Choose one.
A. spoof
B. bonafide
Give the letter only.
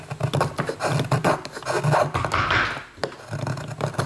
B